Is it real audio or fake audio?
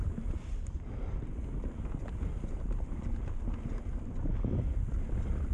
real